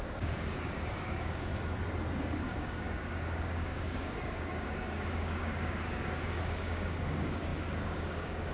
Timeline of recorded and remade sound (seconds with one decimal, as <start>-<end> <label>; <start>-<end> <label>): 0.0-1.5 remade; 1.5-2.2 recorded; 2.2-8.5 remade